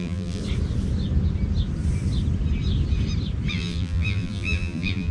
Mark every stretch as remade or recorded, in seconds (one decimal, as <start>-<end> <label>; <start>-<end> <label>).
0.0-0.4 remade; 0.4-3.5 recorded; 3.5-5.1 remade